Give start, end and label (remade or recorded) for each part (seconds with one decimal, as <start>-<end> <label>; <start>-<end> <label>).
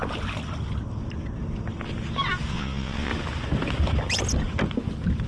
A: 0.0-2.5 recorded; 2.5-3.1 remade; 3.1-5.3 recorded